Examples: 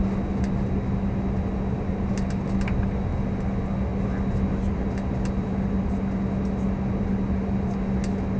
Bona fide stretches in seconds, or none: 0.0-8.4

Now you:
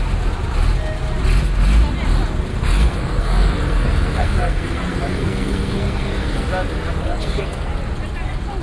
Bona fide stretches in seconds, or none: 0.0-2.5; 6.5-7.0; 7.7-8.6